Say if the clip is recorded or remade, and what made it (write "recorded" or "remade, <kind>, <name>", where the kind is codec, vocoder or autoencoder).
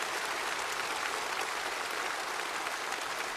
recorded